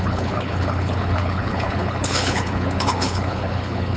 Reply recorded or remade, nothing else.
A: remade